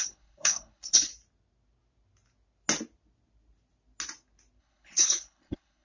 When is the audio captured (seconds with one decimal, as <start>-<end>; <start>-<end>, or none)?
1.1-4.6